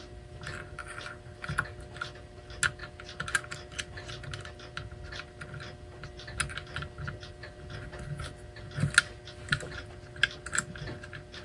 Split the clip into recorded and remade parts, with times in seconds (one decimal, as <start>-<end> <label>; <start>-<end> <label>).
0.0-11.4 recorded